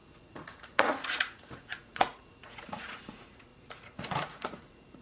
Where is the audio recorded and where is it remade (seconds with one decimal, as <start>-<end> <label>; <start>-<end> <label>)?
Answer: 0.0-5.0 remade